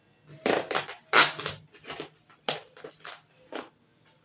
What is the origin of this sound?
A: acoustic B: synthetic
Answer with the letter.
A